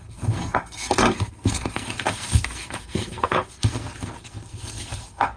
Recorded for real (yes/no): no